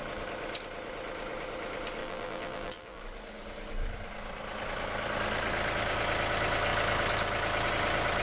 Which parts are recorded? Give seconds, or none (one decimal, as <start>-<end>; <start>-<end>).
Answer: 0.0-2.0; 3.0-8.2